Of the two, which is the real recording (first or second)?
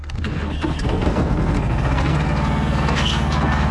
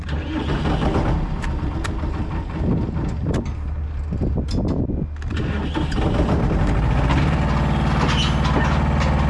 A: second